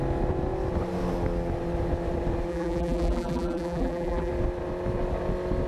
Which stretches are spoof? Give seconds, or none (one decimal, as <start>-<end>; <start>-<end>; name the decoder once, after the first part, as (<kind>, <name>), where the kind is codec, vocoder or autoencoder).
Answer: 2.5-4.3 (vocoder, BigVGAN v2)